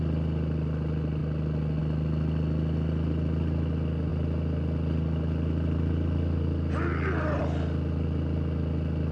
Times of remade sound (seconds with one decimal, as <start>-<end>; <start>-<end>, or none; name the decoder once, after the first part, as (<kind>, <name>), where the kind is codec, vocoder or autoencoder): none

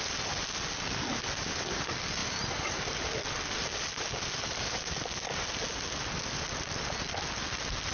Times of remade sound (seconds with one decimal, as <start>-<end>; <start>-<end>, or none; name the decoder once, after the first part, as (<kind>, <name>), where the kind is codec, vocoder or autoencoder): none

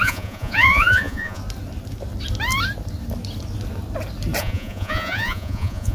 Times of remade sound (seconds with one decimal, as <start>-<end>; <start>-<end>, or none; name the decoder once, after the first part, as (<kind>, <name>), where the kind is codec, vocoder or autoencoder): 0.0-1.4 (vocoder, Vocos); 4.4-5.9

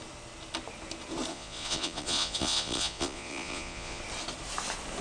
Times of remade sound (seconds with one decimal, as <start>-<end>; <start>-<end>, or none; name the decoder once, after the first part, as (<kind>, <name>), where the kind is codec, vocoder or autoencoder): 1.3-4.0 (vocoder, Vocos)

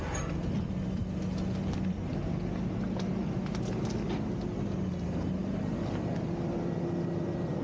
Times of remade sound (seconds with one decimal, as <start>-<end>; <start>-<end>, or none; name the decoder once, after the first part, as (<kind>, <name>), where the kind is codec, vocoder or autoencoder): none

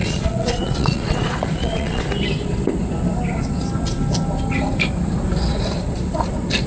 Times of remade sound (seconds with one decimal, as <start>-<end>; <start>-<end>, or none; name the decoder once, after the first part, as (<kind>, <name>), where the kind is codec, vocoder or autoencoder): 0.0-2.0 (vocoder, Vocos)

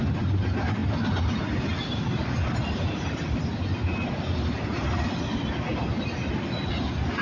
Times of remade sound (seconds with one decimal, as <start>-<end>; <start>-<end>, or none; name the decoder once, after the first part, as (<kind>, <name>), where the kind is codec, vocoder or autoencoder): none

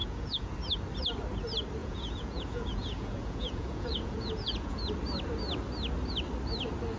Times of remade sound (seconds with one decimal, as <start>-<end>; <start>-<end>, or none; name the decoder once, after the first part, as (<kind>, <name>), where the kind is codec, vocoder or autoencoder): 0.0-0.5 (vocoder, Vocos); 1.8-4.8